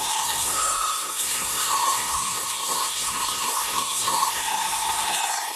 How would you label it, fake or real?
fake